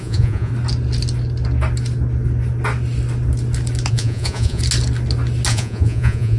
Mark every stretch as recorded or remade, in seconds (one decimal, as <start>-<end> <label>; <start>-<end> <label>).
0.0-0.5 remade; 0.5-3.9 recorded; 3.9-4.6 remade; 4.6-5.5 recorded; 5.5-6.4 remade